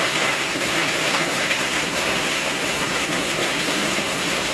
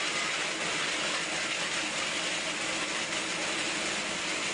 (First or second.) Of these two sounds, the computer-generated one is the first